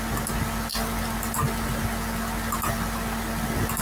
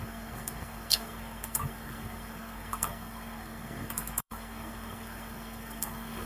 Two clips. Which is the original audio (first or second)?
first